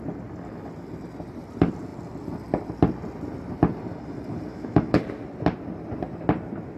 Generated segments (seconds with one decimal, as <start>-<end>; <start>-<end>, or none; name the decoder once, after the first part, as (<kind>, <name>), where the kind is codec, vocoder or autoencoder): 4.5-5.0 (autoencoder, DAC-VAE)

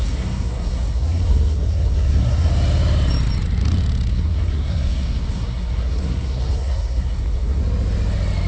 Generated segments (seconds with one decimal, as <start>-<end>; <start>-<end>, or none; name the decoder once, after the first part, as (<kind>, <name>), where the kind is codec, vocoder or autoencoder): 0.0-2.5 (codec, SNAC); 4.1-7.6

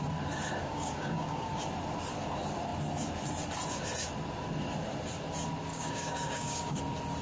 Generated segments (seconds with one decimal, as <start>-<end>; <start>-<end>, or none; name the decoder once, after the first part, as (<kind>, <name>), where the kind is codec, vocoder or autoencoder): 0.6-1.5 (codec, DAC); 5.7-6.8

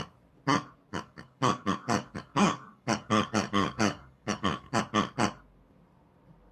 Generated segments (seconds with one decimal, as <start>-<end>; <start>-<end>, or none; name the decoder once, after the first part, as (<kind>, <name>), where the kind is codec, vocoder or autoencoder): 0.9-4.8 (codec, DAC)

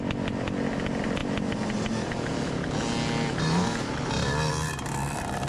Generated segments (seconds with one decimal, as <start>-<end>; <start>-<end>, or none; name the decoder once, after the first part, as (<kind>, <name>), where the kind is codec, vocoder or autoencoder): none

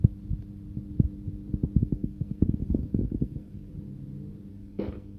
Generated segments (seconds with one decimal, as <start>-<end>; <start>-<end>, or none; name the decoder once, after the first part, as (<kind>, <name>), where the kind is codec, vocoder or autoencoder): 1.8-3.7 (codec, SNAC); 4.5-5.2

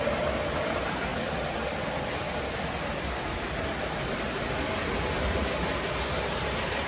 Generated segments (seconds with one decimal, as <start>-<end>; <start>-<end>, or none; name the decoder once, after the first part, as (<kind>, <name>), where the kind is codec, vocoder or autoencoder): none

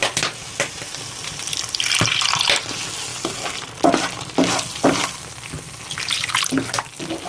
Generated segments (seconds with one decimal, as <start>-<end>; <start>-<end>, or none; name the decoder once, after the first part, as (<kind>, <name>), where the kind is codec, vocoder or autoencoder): none